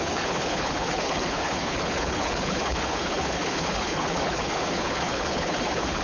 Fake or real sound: fake